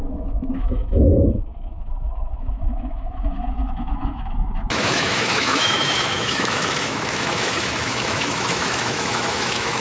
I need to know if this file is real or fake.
fake